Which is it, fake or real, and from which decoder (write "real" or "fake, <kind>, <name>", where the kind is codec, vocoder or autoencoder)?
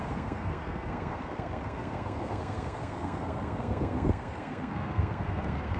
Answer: fake, codec, SNAC